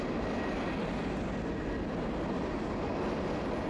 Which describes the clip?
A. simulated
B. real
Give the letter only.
B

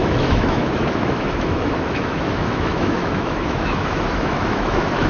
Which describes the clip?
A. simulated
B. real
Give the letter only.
A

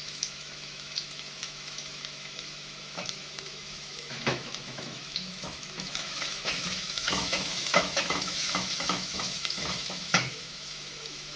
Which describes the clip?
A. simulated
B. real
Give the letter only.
A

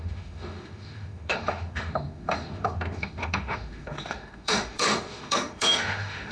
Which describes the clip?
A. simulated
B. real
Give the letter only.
A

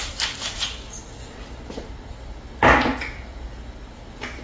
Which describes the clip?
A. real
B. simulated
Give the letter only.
A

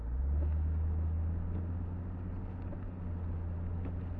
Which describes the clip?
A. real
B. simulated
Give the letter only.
A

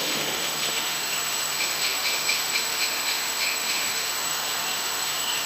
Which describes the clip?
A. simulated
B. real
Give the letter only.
A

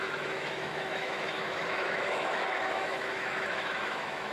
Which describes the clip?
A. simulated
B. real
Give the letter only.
A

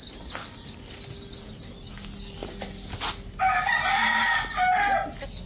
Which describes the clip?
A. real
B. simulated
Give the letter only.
A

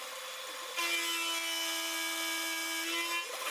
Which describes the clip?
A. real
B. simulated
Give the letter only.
A